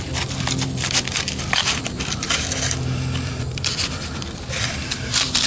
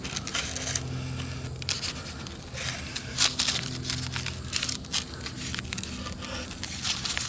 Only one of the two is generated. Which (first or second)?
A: first